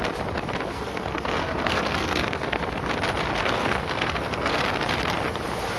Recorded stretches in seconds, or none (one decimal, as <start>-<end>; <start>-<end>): 0.0-0.7; 2.6-3.4; 4.6-5.8